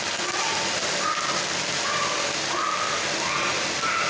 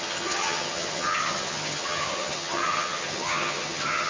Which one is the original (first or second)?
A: first